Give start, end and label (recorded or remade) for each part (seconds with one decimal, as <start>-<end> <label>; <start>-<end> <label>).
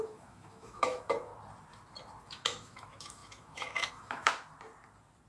0.0-1.3 remade; 1.3-2.2 recorded; 2.2-4.3 remade; 4.3-5.3 recorded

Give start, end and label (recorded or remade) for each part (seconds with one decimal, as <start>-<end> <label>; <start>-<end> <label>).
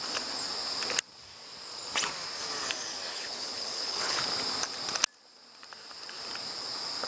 0.0-3.1 recorded; 3.1-4.2 remade; 4.2-7.1 recorded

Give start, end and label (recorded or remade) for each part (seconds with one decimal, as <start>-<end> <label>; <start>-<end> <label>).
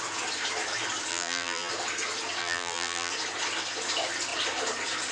0.0-1.1 recorded; 1.1-1.7 remade; 1.7-2.4 recorded; 2.4-3.1 remade; 3.1-5.1 recorded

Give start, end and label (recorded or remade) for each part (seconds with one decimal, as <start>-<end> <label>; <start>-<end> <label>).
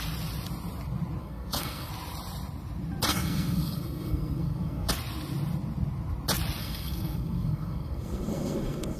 0.0-1.2 recorded; 1.2-1.9 remade; 1.9-3.1 recorded; 3.1-4.9 remade; 4.9-6.6 recorded; 6.6-9.0 remade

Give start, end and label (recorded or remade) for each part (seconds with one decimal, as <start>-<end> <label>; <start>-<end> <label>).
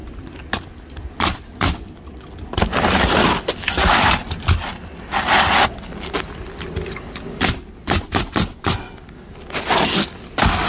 0.0-10.7 recorded